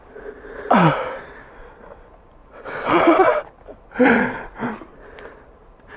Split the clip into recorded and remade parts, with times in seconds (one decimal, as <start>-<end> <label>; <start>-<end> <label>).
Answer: 0.0-2.4 recorded; 2.4-3.4 remade; 3.4-6.0 recorded